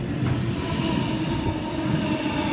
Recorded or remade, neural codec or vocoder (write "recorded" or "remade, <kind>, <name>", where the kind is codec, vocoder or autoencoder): recorded